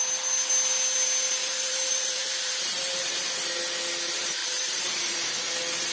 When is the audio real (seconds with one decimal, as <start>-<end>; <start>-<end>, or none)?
0.0-1.4; 3.3-4.4; 5.5-5.9